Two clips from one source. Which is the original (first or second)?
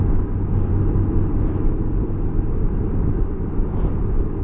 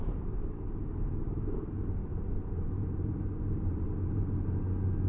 first